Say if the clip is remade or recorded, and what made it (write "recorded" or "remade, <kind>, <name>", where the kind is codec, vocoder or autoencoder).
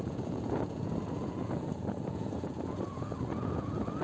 remade, vocoder, Vocos